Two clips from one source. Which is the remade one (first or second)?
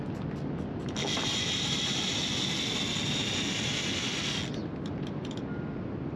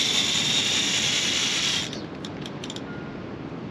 second